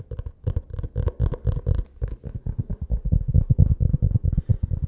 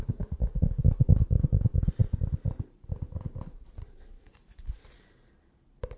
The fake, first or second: second